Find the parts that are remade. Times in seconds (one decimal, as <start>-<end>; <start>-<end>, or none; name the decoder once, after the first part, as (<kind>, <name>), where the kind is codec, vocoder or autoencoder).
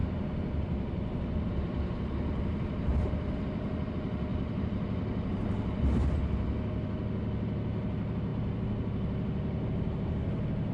0.0-3.9 (vocoder, BigVGAN v2); 4.3-5.9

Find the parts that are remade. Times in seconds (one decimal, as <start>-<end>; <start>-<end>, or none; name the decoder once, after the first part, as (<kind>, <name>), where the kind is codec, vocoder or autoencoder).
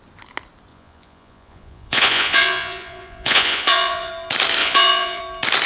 0.7-4.1 (vocoder, Vocos); 4.6-5.2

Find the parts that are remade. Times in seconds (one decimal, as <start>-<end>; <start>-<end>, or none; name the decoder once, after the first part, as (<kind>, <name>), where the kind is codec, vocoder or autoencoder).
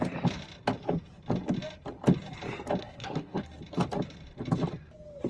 2.8-3.4 (codec, SNAC)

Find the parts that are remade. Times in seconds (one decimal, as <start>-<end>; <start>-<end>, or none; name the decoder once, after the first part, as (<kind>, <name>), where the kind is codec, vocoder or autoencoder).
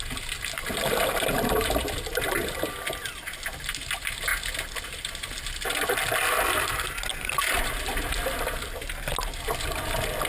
none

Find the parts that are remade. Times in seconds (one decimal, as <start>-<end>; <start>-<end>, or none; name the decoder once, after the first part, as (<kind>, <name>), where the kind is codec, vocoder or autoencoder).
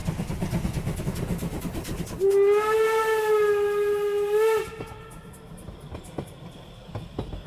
none